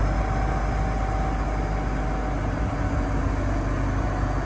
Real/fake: real